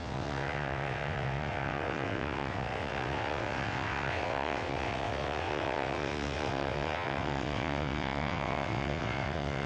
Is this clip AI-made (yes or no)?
yes